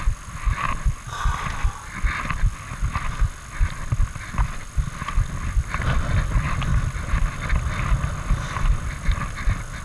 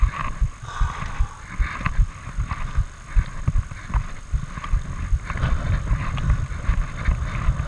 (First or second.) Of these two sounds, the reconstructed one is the second